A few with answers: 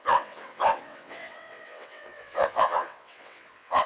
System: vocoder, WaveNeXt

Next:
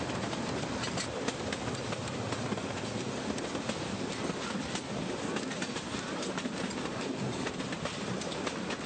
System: none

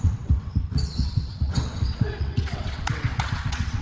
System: vocoder, WaveNeXt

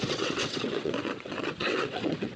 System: vocoder, WaveNeXt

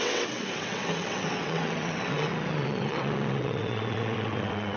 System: vocoder, WaveNeXt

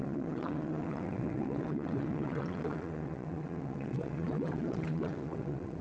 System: vocoder, WaveNeXt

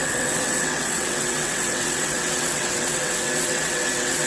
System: vocoder, WaveNeXt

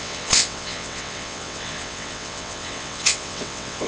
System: vocoder, WaveNeXt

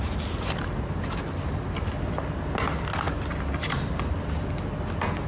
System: none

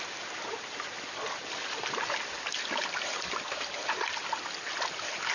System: none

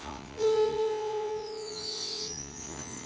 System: vocoder, WaveNeXt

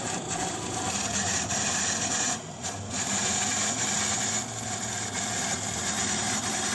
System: none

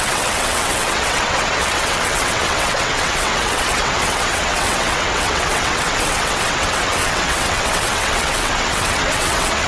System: vocoder, WaveNeXt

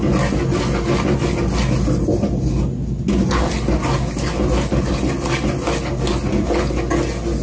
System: none